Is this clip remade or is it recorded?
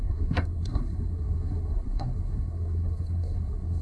remade